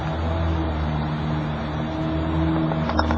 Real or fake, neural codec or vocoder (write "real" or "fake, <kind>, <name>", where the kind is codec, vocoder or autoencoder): real